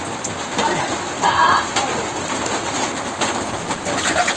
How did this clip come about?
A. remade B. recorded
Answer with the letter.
B